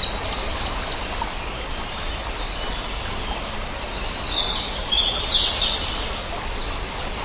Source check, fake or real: real